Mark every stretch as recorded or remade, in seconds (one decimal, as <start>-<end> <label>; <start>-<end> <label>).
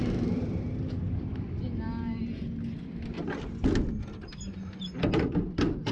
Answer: 0.0-5.9 recorded